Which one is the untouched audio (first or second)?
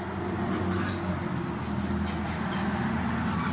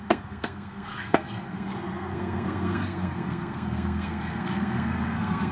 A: first